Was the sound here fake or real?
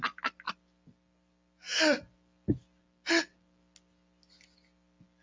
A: real